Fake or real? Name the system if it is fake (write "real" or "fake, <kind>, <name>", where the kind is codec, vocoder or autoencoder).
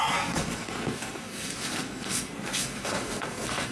fake, codec, SNAC